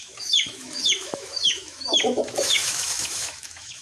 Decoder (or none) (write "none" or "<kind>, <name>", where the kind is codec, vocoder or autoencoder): autoencoder, DAC-VAE